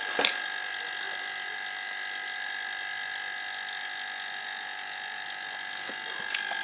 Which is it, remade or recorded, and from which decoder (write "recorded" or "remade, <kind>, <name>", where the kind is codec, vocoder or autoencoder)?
recorded